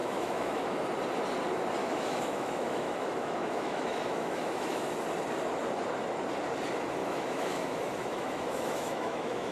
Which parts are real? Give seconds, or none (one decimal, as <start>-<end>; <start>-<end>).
0.8-1.8; 4.9-7.0